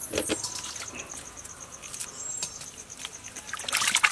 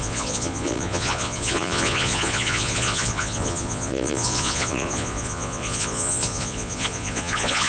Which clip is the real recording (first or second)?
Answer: first